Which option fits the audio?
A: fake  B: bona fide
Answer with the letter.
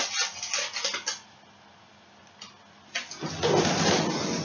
B